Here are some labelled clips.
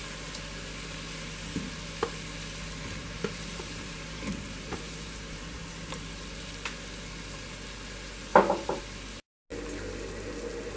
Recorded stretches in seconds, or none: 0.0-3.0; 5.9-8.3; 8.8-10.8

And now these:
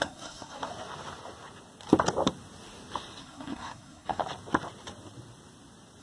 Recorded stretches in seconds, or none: 0.7-3.2; 4.2-6.0

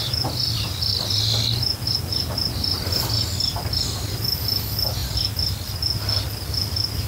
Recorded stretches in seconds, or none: 0.0-7.1